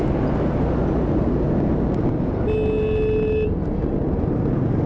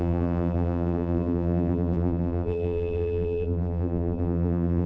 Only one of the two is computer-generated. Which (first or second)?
second